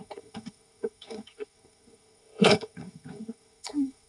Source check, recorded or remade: remade